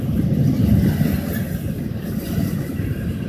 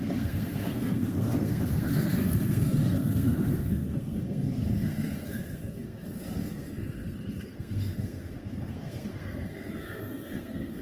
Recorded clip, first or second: first